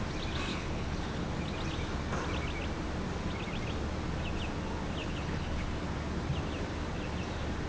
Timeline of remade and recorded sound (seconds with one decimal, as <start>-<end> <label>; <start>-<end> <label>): 0.0-0.5 recorded; 0.5-1.3 remade; 1.3-5.0 recorded; 5.0-5.7 remade; 5.7-7.7 recorded